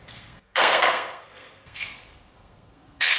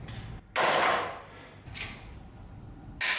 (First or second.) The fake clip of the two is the first